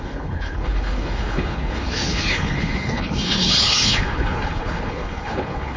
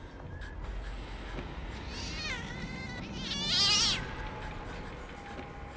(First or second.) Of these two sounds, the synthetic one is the first